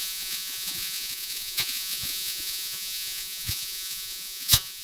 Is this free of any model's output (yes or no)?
no